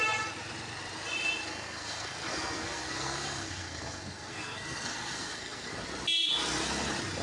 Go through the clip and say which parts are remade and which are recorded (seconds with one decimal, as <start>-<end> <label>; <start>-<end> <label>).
0.0-1.5 recorded; 1.5-5.8 remade; 5.8-7.2 recorded